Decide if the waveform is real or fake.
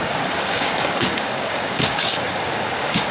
fake